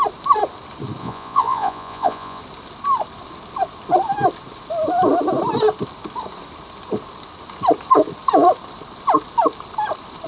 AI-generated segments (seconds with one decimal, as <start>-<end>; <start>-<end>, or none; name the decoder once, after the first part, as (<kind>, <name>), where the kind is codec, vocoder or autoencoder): 1.0-2.4 (vocoder, Vocos)